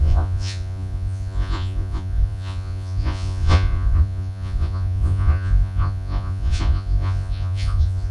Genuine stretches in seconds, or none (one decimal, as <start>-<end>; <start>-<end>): none